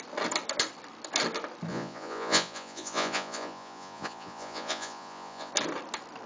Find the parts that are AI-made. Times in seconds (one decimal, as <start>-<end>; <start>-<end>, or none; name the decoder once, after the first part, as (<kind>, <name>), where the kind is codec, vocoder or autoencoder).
1.7-5.5 (vocoder, Vocos)

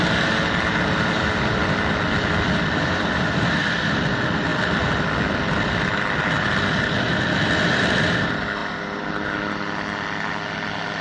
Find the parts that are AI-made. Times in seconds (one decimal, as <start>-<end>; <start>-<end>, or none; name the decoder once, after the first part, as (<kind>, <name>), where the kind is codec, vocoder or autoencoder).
none

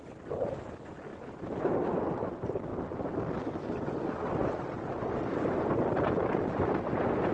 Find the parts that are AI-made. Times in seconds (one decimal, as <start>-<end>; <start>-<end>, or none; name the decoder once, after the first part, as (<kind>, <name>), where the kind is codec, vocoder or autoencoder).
none

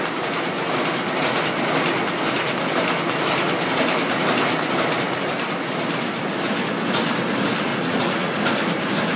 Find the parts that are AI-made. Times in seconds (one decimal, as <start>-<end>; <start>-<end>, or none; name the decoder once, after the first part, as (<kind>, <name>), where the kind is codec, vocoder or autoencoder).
7.7-8.4 (vocoder, Vocos)